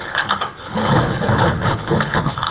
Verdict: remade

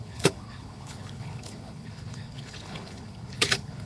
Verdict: remade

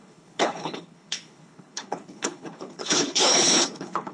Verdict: remade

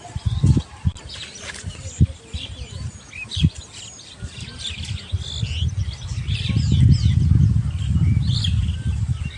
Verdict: recorded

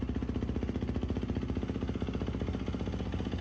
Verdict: recorded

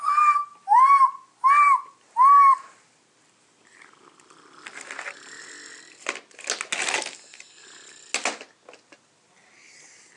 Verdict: recorded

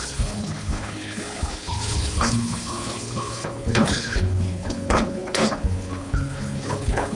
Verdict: remade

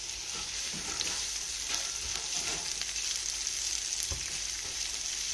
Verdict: recorded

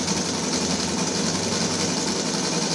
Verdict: recorded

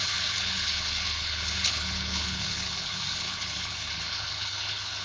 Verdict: remade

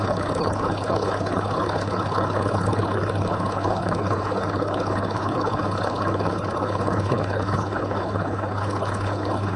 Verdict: remade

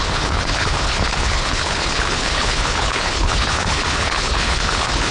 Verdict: remade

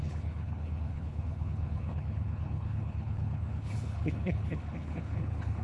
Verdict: remade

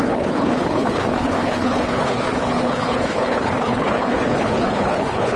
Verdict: remade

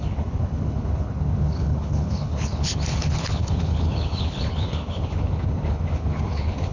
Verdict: remade